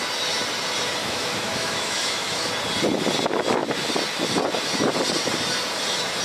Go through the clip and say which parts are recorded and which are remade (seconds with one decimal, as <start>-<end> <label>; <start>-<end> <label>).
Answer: 0.0-1.0 recorded; 1.0-2.5 remade; 2.5-6.2 recorded